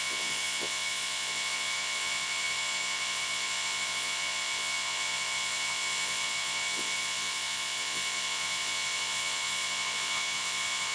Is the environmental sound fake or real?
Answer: fake